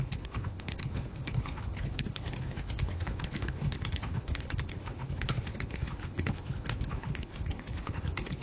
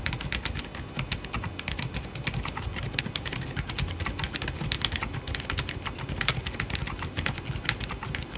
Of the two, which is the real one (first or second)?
second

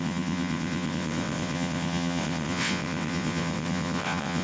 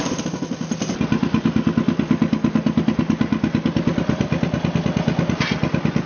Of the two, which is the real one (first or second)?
second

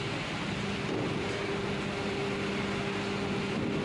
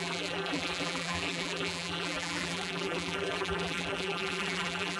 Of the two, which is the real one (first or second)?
first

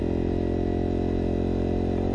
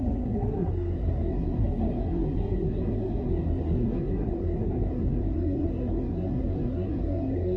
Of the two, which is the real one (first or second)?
first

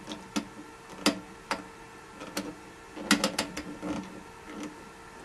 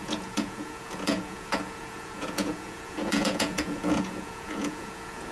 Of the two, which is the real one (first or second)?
first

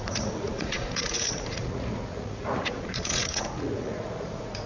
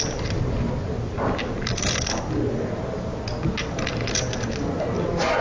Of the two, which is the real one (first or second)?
second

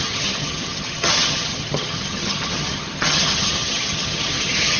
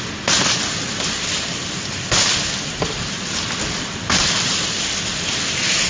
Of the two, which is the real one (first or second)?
second